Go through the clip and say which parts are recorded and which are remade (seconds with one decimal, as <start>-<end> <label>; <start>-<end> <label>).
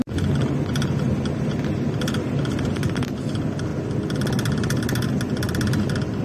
0.0-6.2 recorded